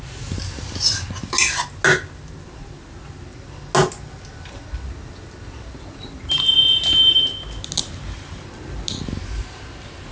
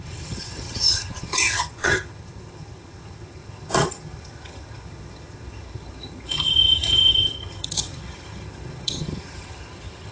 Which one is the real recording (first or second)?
first